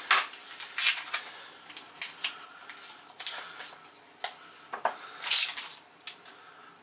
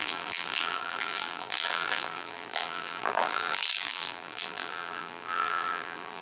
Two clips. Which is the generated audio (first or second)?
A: second